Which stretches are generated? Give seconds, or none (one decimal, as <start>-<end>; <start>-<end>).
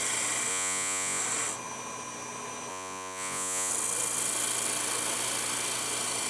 0.5-1.2; 2.7-3.7